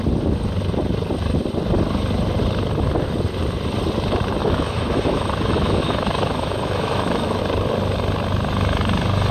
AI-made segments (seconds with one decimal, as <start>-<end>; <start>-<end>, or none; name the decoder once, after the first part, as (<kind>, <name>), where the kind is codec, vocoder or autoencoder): 4.4-7.4 (autoencoder, DAC-VAE)